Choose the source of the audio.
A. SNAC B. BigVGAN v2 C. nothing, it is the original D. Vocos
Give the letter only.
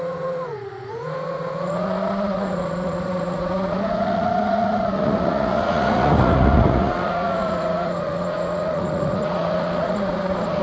D